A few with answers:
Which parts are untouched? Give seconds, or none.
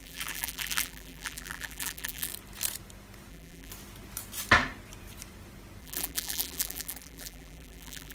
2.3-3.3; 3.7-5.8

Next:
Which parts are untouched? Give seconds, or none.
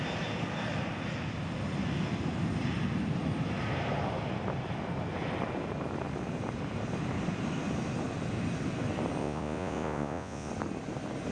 0.0-9.2; 10.5-11.3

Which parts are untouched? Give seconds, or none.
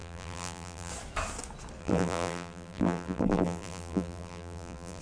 0.9-1.8